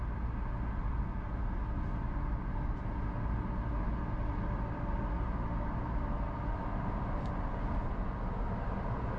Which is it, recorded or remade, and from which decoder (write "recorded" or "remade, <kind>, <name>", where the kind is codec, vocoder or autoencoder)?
recorded